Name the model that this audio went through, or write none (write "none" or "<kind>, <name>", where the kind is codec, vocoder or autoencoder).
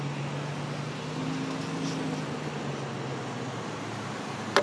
none